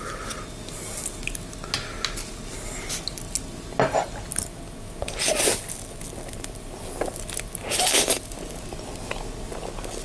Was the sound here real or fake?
real